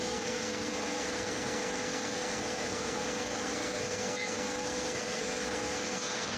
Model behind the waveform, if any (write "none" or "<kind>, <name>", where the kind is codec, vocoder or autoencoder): codec, SNAC